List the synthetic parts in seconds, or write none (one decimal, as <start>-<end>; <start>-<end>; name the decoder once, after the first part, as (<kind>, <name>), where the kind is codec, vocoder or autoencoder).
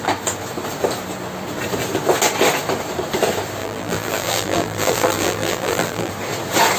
3.6-6.1 (vocoder, BigVGAN v2)